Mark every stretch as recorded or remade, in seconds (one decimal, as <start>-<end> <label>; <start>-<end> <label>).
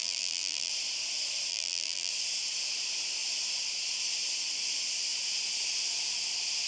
0.0-0.7 remade; 0.7-1.5 recorded; 1.5-2.1 remade; 2.1-6.7 recorded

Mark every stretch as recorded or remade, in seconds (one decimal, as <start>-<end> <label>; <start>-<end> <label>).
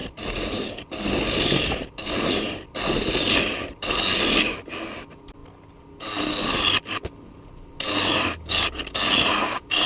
0.0-9.9 recorded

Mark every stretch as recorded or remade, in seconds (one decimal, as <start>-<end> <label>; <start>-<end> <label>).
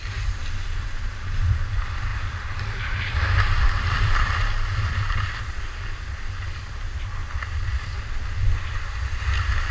0.0-2.1 recorded; 2.1-5.4 remade; 5.4-7.2 recorded; 7.2-8.0 remade; 8.0-9.7 recorded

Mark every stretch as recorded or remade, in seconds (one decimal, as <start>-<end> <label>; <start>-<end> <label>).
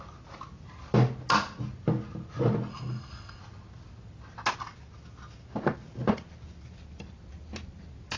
0.0-2.7 recorded; 2.7-3.4 remade; 3.4-8.2 recorded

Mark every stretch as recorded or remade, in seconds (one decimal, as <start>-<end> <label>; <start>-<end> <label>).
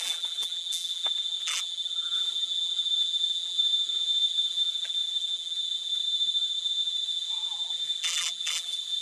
0.0-9.0 remade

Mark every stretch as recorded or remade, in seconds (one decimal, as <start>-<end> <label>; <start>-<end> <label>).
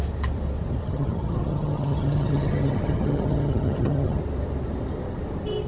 0.0-0.8 recorded; 0.8-4.2 remade; 4.2-5.7 recorded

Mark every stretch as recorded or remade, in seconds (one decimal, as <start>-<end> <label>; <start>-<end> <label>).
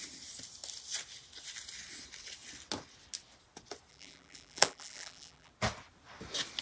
0.0-3.9 recorded; 3.9-5.5 remade; 5.5-6.6 recorded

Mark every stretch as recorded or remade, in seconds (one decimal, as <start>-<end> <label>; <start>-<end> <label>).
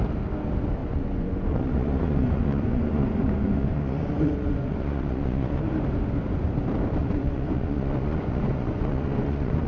0.0-0.8 recorded; 0.8-5.6 remade; 5.6-7.0 recorded; 7.0-9.7 remade